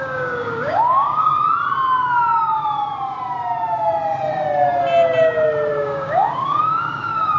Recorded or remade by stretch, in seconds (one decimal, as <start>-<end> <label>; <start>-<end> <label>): 0.0-1.3 remade; 1.3-5.7 recorded; 5.7-7.4 remade